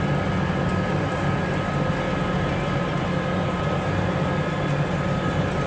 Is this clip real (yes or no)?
yes